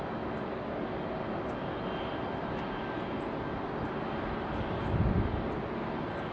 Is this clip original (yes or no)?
yes